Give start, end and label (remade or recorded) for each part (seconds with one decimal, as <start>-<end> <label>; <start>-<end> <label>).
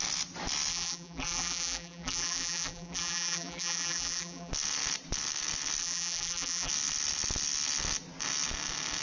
0.0-0.7 recorded; 0.7-4.5 remade; 4.5-5.8 recorded; 5.8-6.7 remade; 6.7-9.0 recorded